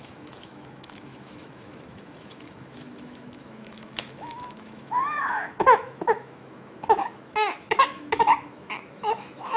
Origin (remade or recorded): remade